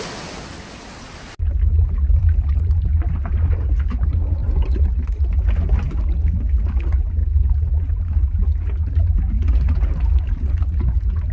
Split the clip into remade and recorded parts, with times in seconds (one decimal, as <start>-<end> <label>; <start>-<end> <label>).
0.0-11.3 recorded